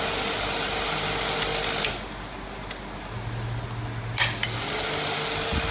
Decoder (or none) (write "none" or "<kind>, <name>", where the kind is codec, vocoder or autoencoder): none